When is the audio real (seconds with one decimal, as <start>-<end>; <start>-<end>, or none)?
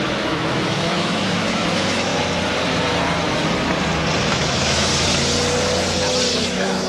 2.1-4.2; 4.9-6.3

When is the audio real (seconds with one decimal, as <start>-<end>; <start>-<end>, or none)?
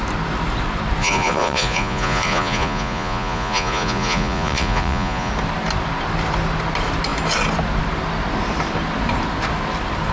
0.0-1.0; 5.3-10.1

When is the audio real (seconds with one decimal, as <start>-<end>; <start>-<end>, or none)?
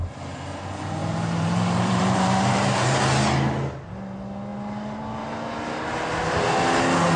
0.0-1.0; 3.0-7.2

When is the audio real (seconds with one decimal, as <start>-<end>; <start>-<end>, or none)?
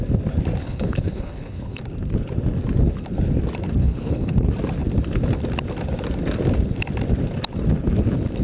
0.0-0.6; 1.8-3.8; 4.3-8.4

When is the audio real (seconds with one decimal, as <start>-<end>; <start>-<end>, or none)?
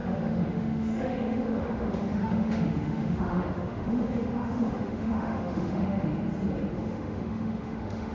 6.1-6.7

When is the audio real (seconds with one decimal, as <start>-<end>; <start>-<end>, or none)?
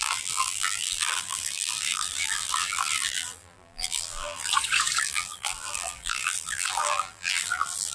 4.5-5.0